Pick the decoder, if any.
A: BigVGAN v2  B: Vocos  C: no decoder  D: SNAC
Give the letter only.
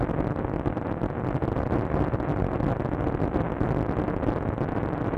C